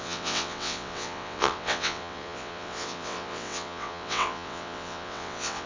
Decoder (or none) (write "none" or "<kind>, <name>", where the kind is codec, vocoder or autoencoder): vocoder, WaveNeXt